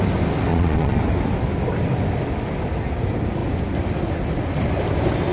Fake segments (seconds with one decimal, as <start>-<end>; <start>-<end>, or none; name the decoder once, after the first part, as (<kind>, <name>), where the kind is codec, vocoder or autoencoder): 0.5-1.0 (vocoder, Vocos)